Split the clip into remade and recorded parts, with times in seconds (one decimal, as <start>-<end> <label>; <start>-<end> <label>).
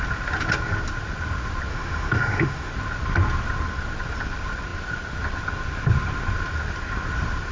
0.0-1.7 recorded; 1.7-2.7 remade; 2.7-7.5 recorded